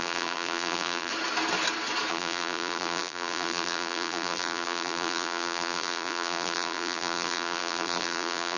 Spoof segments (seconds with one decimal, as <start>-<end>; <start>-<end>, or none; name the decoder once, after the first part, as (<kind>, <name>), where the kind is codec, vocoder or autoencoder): 0.0-1.1 (vocoder, BigVGAN v2); 2.1-8.6